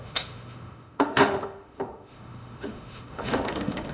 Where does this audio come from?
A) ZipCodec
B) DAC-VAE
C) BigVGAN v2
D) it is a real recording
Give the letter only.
B